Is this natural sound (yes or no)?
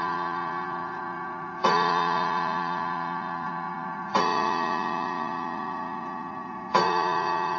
no